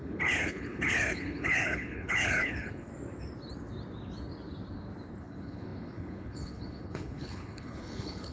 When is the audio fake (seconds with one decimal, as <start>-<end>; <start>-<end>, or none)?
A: 0.0-2.9; 5.2-8.3